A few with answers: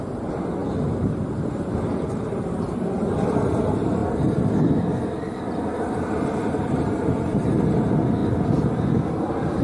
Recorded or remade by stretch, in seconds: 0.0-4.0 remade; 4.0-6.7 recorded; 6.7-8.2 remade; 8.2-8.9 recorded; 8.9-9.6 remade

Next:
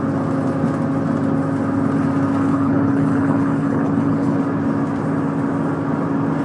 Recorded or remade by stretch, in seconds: 0.0-2.5 recorded; 2.5-4.4 remade; 4.4-6.4 recorded

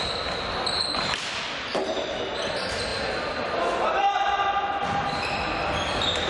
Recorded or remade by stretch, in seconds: 0.0-6.3 recorded

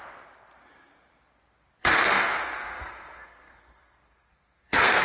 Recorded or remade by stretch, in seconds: 0.0-1.8 recorded; 1.8-5.0 remade

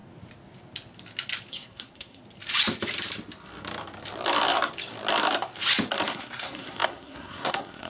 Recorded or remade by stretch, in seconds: 0.0-1.5 recorded; 1.5-2.2 remade; 2.2-6.1 recorded; 6.1-7.9 remade

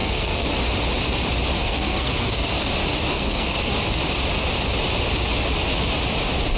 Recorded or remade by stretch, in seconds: 0.0-0.5 remade; 0.5-1.6 recorded; 1.6-2.7 remade; 2.7-3.1 recorded; 3.1-3.7 remade; 3.7-6.6 recorded

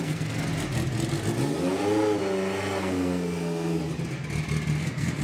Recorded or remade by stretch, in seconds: 0.0-0.5 remade; 0.5-2.8 recorded; 2.8-3.8 remade; 3.8-4.8 recorded; 4.8-5.2 remade

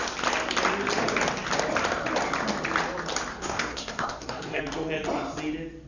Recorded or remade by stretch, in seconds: 0.0-3.3 recorded; 3.3-4.6 remade; 4.6-5.9 recorded